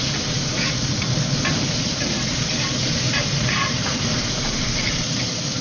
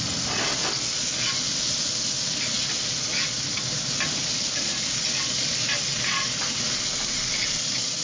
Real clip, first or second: second